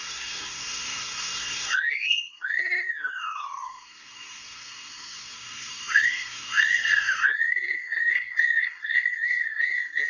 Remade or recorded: remade